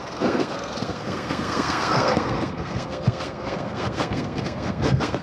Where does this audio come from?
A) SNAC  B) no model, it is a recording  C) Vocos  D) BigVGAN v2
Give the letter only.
A